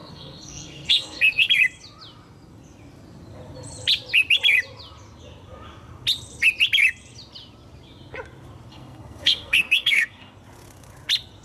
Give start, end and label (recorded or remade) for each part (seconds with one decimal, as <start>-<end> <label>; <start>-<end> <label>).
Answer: 0.0-1.5 remade; 1.5-8.7 recorded; 8.7-10.3 remade; 10.3-11.4 recorded